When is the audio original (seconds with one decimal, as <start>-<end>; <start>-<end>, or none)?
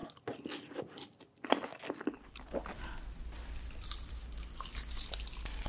0.0-5.7